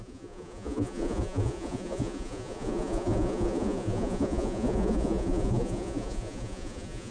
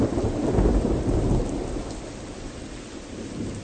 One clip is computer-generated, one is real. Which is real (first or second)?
second